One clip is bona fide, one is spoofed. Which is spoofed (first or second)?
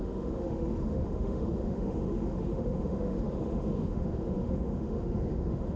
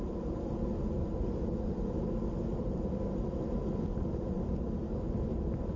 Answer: first